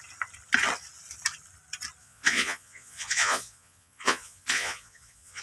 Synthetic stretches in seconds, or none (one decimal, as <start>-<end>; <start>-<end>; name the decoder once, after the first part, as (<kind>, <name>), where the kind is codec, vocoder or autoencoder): 2.0-5.4 (vocoder, Vocos)